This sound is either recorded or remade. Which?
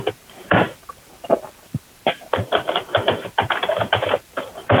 remade